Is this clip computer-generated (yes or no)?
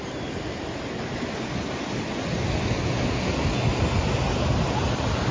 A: no